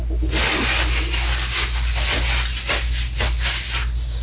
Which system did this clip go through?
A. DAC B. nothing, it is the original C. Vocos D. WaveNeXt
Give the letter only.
B